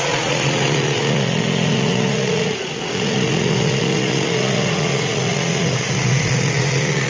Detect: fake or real fake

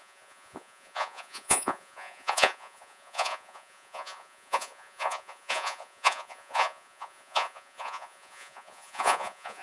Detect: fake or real fake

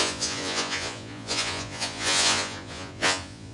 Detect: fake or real fake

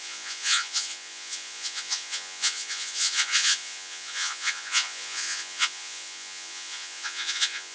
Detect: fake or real fake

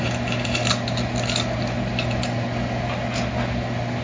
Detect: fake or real real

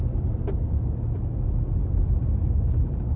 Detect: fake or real real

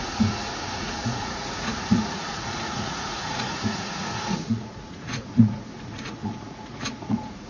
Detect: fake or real fake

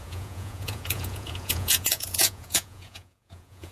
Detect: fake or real fake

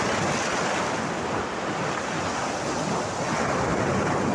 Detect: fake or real real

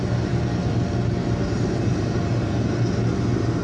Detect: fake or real real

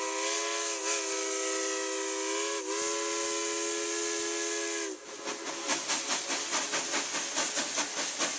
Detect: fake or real real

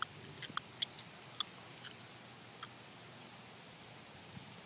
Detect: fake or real real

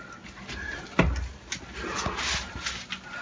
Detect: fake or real real